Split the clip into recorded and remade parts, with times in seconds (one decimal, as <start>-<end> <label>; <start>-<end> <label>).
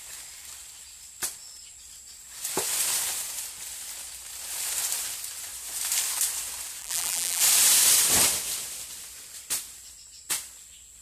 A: 0.0-6.8 recorded; 6.8-7.4 remade; 7.4-11.0 recorded